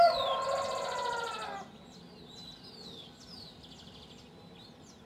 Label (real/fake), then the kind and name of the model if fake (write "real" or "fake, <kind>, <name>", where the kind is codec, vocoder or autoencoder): real